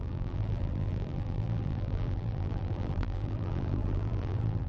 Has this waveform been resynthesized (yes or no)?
yes